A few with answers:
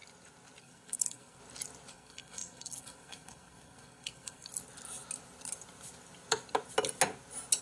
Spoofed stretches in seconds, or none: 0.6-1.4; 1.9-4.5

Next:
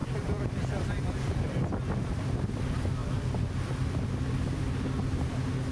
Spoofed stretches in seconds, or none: 0.0-2.6; 3.0-3.7

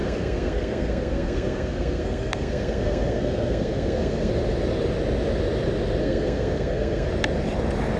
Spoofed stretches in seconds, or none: 0.0-4.3; 6.0-7.1

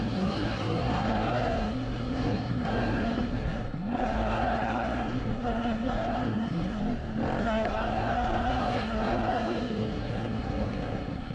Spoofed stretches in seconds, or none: 0.0-6.8; 7.4-11.3

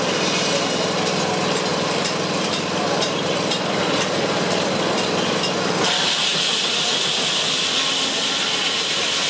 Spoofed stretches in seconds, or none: 1.7-5.8